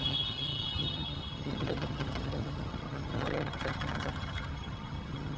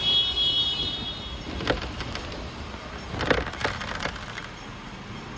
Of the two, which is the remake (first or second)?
first